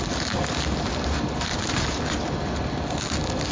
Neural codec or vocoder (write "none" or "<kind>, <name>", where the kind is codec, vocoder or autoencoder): none